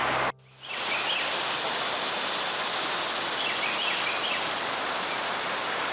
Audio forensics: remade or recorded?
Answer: recorded